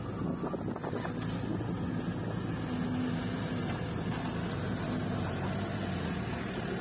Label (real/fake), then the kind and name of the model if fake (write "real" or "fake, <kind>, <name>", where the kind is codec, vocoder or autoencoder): real